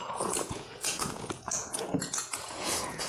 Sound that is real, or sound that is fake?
fake